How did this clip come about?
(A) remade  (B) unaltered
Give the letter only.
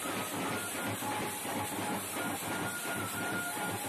B